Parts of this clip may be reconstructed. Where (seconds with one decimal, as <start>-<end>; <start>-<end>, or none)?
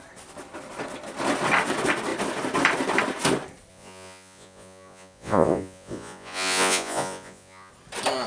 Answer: 3.7-7.7